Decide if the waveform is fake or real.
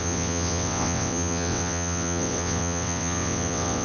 fake